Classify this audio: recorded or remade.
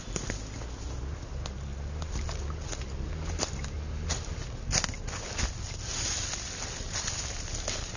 recorded